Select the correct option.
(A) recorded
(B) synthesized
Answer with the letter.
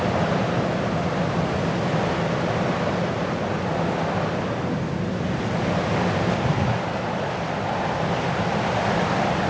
A